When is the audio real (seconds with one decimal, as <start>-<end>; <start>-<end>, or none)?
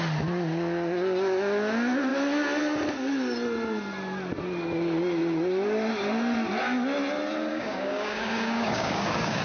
0.0-7.5